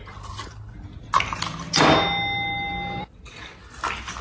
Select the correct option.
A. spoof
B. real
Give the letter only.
B